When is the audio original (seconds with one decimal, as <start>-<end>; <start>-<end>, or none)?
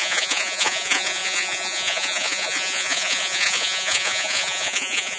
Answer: none